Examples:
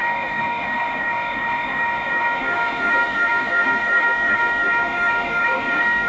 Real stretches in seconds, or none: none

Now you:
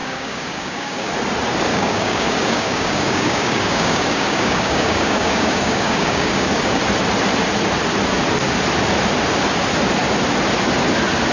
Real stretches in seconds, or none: 1.1-1.7; 6.8-11.3

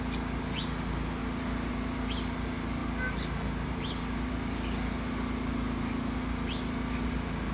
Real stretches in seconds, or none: 0.0-7.5

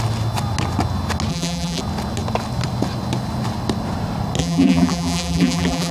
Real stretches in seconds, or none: 0.0-1.3; 1.8-4.4

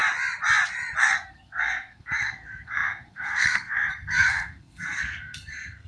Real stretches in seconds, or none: 0.0-1.0